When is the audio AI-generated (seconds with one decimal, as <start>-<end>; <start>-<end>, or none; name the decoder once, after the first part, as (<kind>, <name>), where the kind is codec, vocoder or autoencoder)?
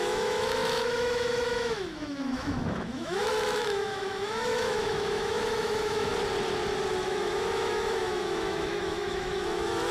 0.0-6.1 (autoencoder, DAC-VAE); 7.1-9.9